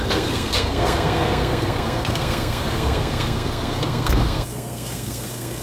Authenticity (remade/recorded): remade